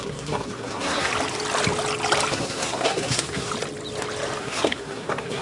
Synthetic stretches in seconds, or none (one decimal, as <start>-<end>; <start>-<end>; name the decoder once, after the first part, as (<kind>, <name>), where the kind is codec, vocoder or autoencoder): 0.0-1.1 (codec, SNAC); 2.3-3.5; 4.4-5.4